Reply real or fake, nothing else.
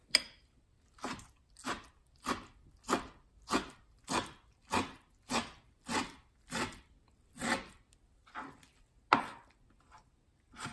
real